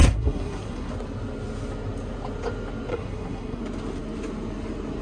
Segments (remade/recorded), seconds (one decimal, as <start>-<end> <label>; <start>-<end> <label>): 0.0-0.9 remade; 0.9-2.9 recorded; 2.9-3.6 remade; 3.6-5.0 recorded